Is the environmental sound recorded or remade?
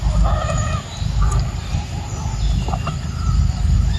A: recorded